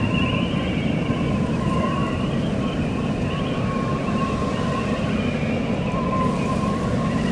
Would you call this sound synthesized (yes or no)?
no